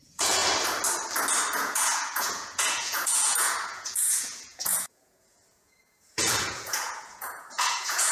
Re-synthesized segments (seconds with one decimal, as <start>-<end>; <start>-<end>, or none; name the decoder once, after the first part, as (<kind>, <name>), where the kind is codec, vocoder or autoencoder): 0.0-0.4 (vocoder, Vocos); 1.5-8.1